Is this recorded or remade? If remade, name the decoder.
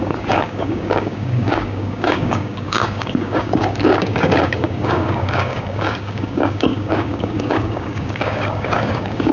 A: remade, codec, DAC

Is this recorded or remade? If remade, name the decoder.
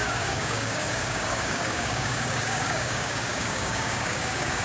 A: remade, codec, DAC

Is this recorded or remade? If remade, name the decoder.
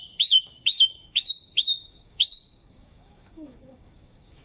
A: remade, codec, DAC